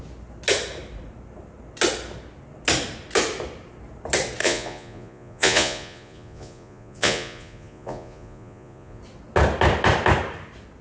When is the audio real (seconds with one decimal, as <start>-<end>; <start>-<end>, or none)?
0.0-4.4; 9.0-10.8